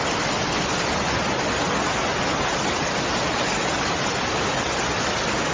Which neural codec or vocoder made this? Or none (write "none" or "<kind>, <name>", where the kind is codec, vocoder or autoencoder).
none